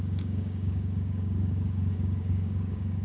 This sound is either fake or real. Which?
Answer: fake